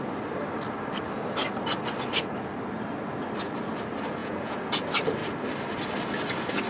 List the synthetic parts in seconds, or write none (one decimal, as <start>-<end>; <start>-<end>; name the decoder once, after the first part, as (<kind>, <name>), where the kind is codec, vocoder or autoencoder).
4.2-4.8 (vocoder, Vocos)